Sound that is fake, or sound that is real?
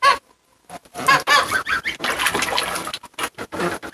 real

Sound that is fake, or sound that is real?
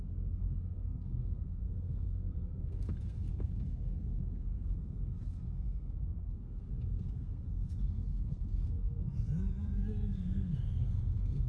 fake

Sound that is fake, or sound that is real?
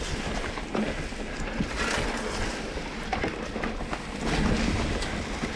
real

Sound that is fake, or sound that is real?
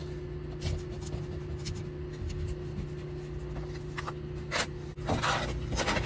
real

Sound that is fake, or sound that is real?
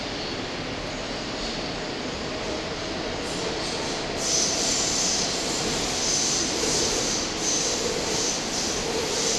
real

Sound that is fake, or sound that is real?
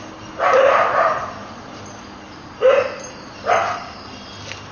real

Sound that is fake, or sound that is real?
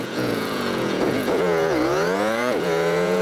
fake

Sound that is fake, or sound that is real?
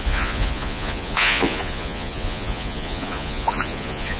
fake